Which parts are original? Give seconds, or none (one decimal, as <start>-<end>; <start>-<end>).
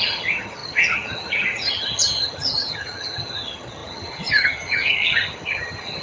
none